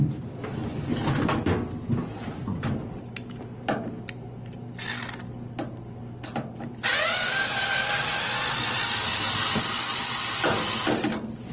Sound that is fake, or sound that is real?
real